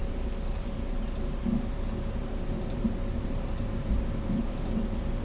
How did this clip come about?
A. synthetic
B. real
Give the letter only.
B